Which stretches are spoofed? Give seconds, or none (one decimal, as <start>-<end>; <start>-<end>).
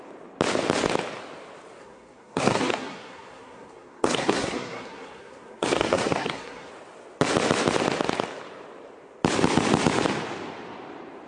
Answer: 1.8-6.7